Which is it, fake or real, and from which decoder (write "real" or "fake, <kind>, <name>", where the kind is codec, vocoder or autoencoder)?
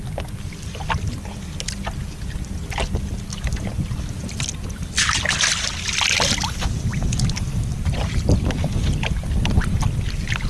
real